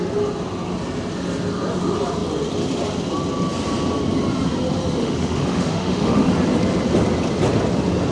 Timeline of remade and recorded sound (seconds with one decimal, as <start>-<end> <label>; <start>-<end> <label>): 0.0-5.0 recorded; 5.0-6.3 remade; 6.3-8.1 recorded